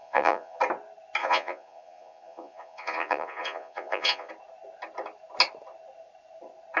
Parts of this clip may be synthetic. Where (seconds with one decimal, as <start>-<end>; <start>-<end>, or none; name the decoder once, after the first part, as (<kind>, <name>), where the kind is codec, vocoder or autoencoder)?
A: 0.0-0.6 (vocoder, Vocos); 1.2-4.3